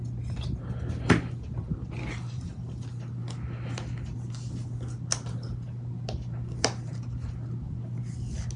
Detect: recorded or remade recorded